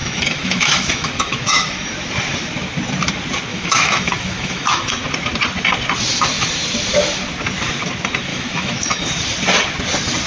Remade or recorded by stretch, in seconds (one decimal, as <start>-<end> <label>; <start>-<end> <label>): 0.0-1.9 remade; 1.9-3.5 recorded; 3.5-4.9 remade; 4.9-8.3 recorded; 8.3-9.1 remade; 9.1-10.3 recorded